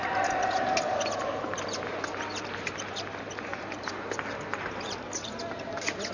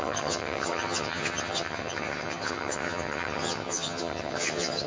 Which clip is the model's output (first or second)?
second